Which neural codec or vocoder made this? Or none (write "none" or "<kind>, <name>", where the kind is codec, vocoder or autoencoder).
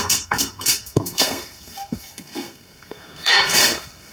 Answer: codec, SNAC